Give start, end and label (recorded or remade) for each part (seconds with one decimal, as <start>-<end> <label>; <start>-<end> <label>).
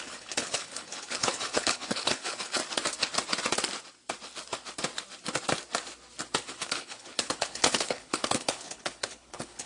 0.0-2.6 remade; 2.6-6.6 recorded; 6.6-9.7 remade